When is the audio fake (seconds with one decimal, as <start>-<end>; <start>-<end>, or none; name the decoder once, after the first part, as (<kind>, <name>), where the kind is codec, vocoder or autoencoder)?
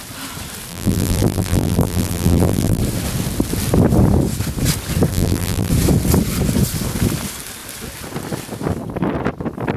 0.7-2.8 (vocoder, BigVGAN v2); 5.1-5.7